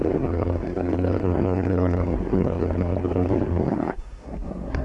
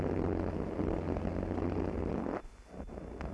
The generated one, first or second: first